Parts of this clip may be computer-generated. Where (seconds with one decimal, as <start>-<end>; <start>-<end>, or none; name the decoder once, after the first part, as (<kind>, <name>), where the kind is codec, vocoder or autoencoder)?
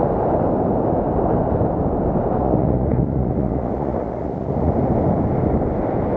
2.4-4.7 (vocoder, Vocos)